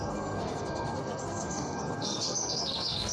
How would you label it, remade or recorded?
remade